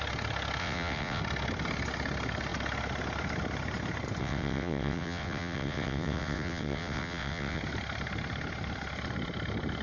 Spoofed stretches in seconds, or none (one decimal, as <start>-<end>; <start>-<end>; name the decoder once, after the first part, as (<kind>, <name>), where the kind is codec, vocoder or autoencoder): 0.6-1.2 (vocoder, WaveNeXt); 4.2-7.6